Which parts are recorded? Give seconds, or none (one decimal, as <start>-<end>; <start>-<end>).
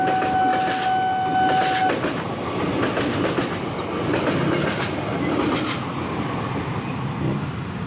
0.0-7.9